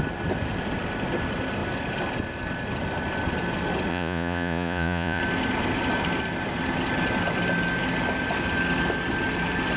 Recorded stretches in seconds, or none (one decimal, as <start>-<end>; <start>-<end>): 0.0-3.9; 5.2-9.8